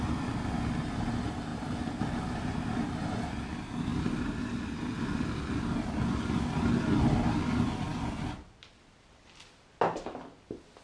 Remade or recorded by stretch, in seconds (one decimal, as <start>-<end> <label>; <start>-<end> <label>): 0.0-1.5 recorded; 1.5-3.3 remade; 3.3-3.9 recorded; 3.9-4.4 remade; 4.4-10.8 recorded